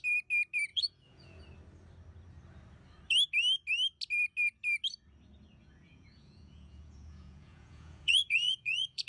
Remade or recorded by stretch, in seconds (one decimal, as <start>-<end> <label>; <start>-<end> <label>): 0.0-0.7 recorded; 0.7-1.4 remade; 1.4-5.6 recorded; 5.6-9.1 remade